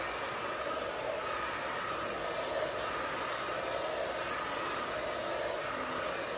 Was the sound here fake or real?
real